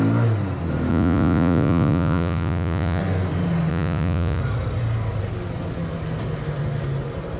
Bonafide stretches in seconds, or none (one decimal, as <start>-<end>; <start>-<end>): 0.0-0.9; 3.0-3.7; 4.4-7.4